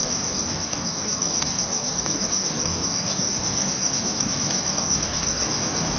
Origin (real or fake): fake